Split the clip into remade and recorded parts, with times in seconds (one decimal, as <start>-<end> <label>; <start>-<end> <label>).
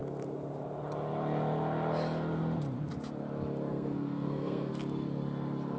0.0-3.7 recorded; 3.7-4.7 remade; 4.7-5.8 recorded